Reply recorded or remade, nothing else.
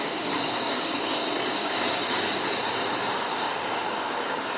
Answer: remade